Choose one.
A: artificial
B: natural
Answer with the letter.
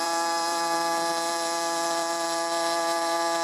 A